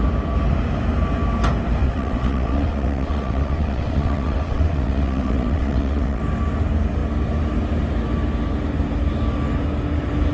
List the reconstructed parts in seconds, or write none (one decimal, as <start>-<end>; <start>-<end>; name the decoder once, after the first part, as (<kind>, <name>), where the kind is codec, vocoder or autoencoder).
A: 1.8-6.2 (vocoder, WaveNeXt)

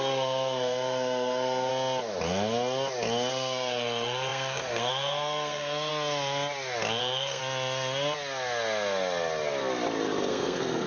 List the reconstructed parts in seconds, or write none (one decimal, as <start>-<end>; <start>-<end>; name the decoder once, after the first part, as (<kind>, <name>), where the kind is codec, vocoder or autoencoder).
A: 0.0-1.7 (codec, SNAC); 3.3-5.9; 7.0-7.4; 10.3-10.9

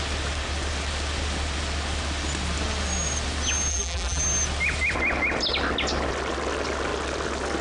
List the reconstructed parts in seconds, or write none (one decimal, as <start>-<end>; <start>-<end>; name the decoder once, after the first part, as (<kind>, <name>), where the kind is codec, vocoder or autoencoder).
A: 3.7-4.2 (vocoder, BigVGAN v2)

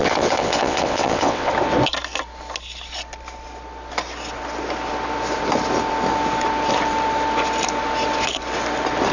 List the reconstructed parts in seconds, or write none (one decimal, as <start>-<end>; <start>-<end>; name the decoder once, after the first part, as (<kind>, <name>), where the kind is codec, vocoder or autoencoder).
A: 0.0-1.5 (vocoder, WaveNeXt)